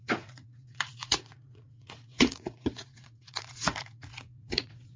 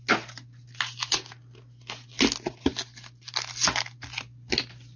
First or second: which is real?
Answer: second